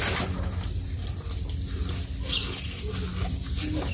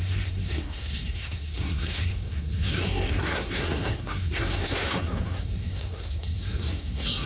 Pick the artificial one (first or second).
second